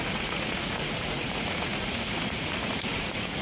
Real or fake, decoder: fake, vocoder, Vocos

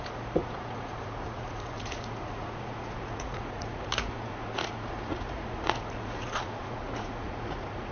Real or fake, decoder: fake, vocoder, Vocos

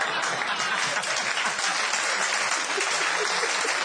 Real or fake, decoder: real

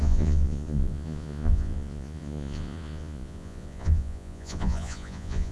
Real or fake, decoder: fake, vocoder, Vocos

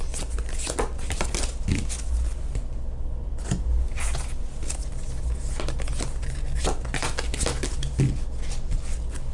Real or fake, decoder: real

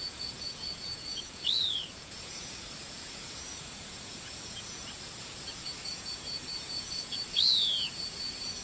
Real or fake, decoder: fake, vocoder, Vocos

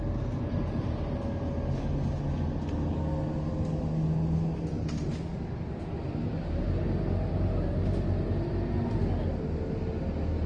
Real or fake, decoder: real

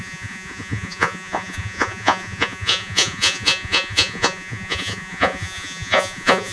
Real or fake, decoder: fake, vocoder, Vocos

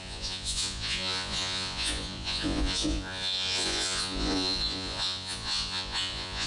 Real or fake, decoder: fake, vocoder, Vocos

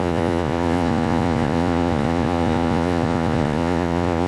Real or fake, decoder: fake, vocoder, Vocos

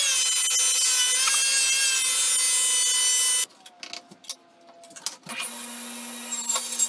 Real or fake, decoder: real